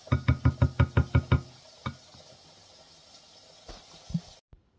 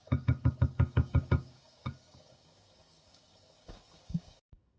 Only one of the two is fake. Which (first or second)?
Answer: second